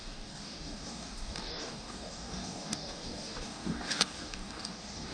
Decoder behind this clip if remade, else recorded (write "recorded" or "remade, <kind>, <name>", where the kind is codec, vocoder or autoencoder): remade, codec, DAC